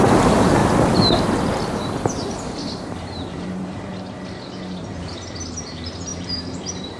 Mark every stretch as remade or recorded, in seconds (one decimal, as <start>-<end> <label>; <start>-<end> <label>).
0.0-0.6 remade; 0.6-1.7 recorded; 1.7-3.9 remade; 3.9-4.8 recorded; 4.8-7.0 remade